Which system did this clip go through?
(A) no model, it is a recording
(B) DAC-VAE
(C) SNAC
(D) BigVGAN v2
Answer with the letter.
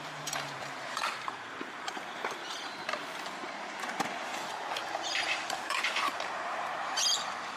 D